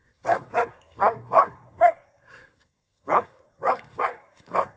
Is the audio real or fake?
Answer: fake